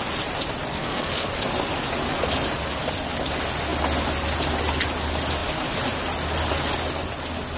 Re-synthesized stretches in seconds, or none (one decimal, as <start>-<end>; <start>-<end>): 0.7-1.3